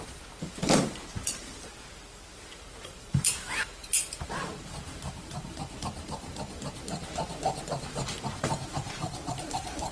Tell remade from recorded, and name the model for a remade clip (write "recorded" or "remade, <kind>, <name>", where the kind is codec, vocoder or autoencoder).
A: remade, vocoder, BigVGAN v2